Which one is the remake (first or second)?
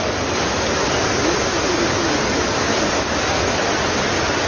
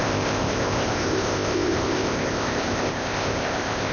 second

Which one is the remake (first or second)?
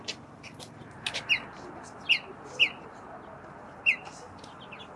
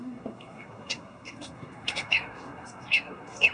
second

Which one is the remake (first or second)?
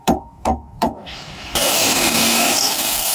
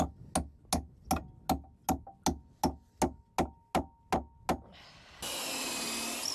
first